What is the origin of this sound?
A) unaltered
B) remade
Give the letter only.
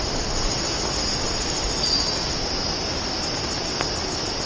A